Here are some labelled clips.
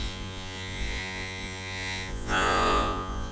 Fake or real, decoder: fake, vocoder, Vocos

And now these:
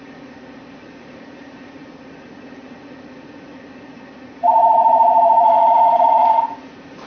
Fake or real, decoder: fake, vocoder, Vocos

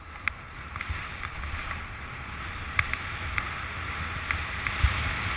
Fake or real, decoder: real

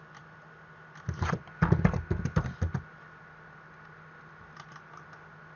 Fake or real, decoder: real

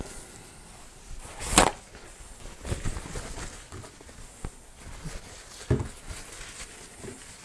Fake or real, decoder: real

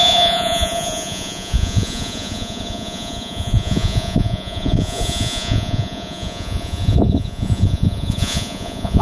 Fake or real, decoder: fake, vocoder, Vocos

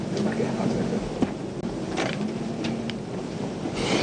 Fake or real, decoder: real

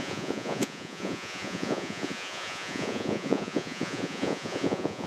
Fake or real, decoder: fake, vocoder, Vocos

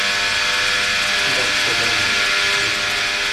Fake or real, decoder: real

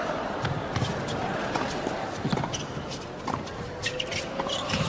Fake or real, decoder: real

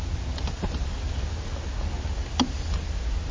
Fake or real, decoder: real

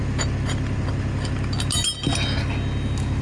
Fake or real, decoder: real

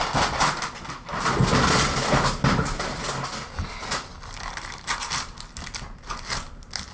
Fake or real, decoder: real